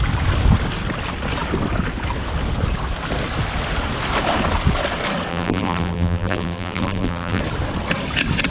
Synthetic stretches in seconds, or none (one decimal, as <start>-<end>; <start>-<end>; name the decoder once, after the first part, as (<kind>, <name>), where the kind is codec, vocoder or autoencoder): 5.3-7.4 (vocoder, BigVGAN v2)